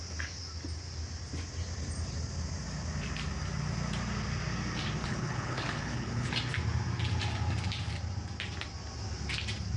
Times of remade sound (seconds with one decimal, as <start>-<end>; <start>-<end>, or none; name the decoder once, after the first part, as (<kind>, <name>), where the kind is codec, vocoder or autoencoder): 5.0-6.3 (codec, HILCodec)